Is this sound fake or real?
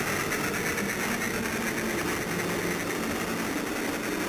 real